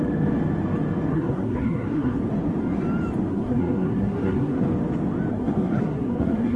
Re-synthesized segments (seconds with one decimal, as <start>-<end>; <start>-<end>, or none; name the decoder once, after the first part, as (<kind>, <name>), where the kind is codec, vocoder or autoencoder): 1.1-2.2 (codec, SNAC); 3.3-4.6; 5.3-6.6